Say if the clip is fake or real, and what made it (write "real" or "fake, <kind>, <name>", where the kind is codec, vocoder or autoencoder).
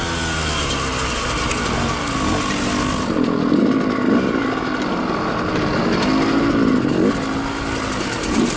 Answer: real